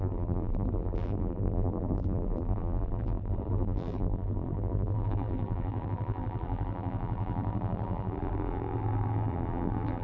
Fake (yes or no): yes